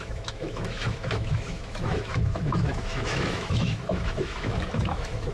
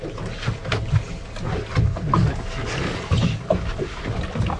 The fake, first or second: first